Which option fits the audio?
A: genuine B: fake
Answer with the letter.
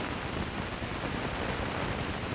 A